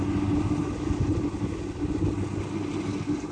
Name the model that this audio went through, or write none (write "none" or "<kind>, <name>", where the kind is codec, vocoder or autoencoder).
none